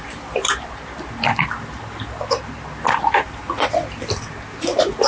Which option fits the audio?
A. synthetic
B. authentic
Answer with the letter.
B